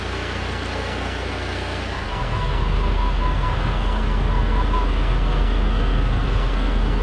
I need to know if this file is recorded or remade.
remade